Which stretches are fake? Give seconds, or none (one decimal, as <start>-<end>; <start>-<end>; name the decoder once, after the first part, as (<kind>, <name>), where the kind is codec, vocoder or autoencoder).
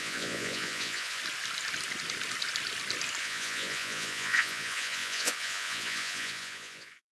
0.0-1.2 (vocoder, Vocos); 3.2-7.1